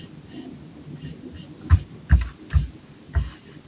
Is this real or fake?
real